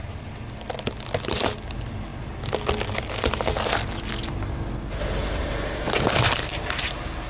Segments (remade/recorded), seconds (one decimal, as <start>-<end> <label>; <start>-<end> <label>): 0.0-7.3 recorded